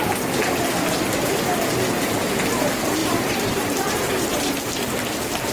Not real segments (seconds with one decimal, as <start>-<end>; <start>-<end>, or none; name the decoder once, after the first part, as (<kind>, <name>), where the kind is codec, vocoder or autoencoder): 3.0-4.8 (vocoder, BigVGAN v2)